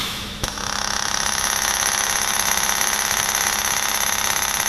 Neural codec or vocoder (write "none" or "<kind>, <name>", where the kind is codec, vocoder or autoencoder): autoencoder, DAC-VAE